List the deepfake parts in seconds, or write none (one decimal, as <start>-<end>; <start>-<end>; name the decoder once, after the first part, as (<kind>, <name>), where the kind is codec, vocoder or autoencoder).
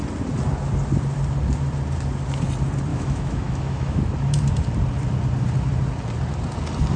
2.9-4.0 (autoencoder, DAC-VAE)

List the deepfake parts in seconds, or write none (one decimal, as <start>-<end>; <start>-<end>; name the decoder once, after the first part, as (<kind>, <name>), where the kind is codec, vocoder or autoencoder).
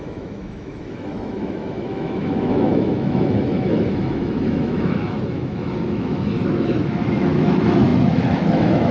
0.0-8.9 (autoencoder, DAC-VAE)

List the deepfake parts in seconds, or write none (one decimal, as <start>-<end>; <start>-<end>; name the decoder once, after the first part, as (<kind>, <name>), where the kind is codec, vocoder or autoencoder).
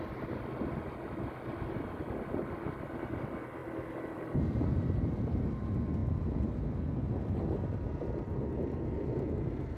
none